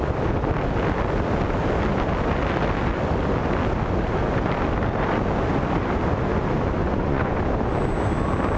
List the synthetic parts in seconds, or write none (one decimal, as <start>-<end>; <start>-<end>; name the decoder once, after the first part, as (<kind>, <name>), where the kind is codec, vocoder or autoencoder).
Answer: 6.8-7.4 (vocoder, Vocos)